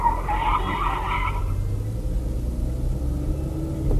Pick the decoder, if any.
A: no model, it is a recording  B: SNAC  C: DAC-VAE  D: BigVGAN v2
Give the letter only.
A